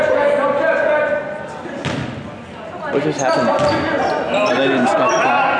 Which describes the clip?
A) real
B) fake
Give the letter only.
A